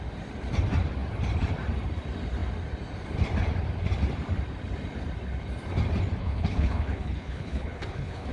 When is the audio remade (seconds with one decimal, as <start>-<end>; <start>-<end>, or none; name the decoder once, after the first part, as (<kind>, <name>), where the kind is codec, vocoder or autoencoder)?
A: 6.2-8.3 (codec, HILCodec)